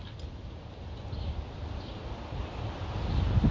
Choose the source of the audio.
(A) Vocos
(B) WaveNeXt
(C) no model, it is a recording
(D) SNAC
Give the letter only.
C